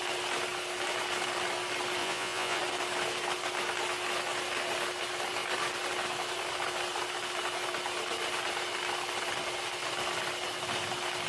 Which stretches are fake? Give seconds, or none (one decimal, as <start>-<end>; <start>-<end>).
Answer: 2.0-2.6